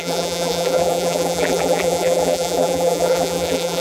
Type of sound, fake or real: fake